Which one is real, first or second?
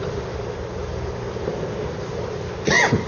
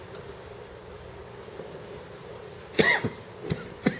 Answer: first